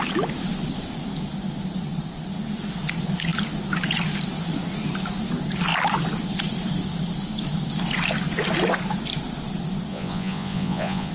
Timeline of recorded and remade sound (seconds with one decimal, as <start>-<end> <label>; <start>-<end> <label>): 0.0-9.9 recorded; 9.9-11.1 remade